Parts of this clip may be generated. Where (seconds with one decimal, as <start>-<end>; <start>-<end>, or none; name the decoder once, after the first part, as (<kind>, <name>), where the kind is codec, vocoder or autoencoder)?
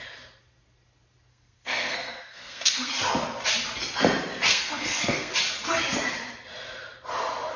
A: 1.3-2.9 (codec, SNAC); 4.5-5.3